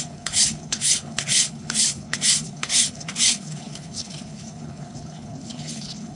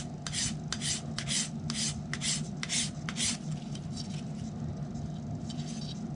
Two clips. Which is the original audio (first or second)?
second